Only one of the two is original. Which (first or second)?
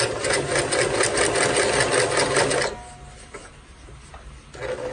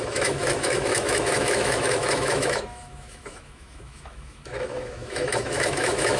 first